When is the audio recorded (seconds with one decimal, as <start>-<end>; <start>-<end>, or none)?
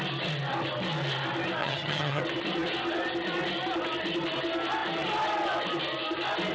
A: 0.0-1.6; 2.2-6.5